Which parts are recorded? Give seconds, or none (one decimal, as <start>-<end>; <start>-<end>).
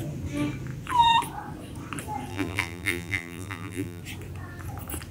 0.0-2.3; 4.0-5.1